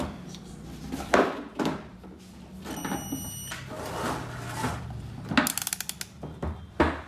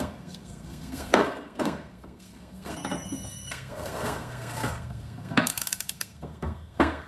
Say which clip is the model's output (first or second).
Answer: second